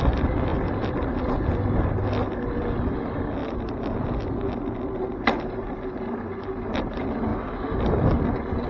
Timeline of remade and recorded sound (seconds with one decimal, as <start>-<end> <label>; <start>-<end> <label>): 0.0-0.5 recorded; 0.5-1.1 remade; 1.1-8.7 recorded